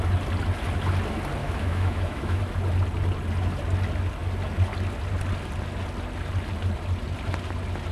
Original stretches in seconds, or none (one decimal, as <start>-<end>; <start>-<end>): 0.0-1.4; 2.4-7.9